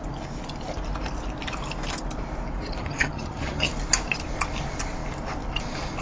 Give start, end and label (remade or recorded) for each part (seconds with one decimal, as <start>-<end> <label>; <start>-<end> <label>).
0.0-2.8 recorded; 2.8-3.7 remade; 3.7-6.0 recorded